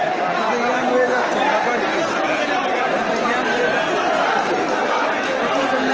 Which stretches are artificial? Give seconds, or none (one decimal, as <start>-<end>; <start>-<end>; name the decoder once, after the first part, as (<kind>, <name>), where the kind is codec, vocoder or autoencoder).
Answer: 1.9-5.4 (vocoder, BigVGAN v2)